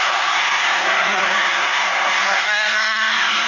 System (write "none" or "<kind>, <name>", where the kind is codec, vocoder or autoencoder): codec, SNAC